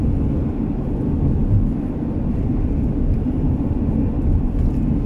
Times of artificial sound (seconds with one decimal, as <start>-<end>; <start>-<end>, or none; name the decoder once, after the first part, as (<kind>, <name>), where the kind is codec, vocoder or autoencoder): none